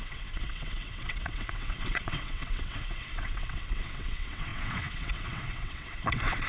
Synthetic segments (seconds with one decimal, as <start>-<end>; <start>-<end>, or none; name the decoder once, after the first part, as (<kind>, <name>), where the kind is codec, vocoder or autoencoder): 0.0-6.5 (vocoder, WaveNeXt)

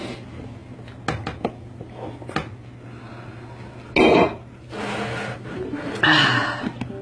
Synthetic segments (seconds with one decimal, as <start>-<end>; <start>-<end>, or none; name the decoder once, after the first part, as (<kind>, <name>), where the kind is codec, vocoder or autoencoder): none

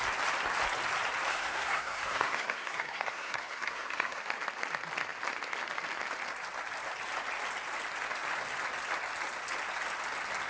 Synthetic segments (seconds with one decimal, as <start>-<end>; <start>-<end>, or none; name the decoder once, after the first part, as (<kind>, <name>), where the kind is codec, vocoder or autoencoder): 1.3-4.2 (codec, SNAC)